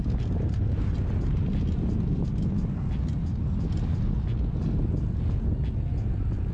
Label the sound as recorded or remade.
recorded